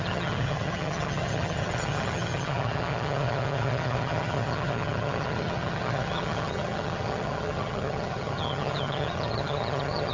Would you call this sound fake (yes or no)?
yes